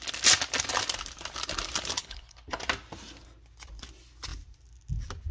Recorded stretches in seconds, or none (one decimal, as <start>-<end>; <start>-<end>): 0.0-2.0; 2.6-5.3